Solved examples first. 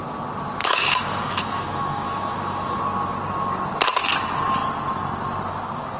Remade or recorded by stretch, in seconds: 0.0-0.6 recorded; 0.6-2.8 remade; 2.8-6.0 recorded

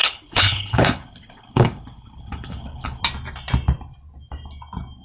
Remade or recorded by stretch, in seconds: 0.0-3.0 remade; 3.0-5.0 recorded

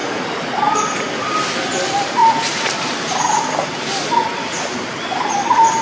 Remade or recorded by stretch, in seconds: 0.0-5.8 recorded

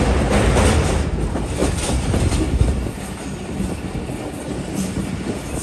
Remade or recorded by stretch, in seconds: 0.0-5.6 recorded

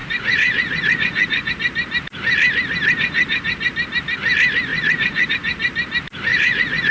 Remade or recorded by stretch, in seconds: 0.0-1.5 remade; 1.5-4.7 recorded; 4.7-5.3 remade; 5.3-6.3 recorded; 6.3-6.9 remade